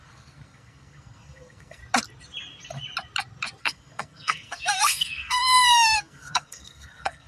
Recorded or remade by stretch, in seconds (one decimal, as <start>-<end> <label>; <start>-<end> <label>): 0.0-1.8 remade; 1.8-3.6 recorded; 3.6-7.3 remade